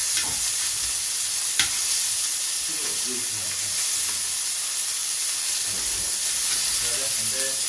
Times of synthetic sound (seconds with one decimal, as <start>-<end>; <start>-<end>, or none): 5.0-5.5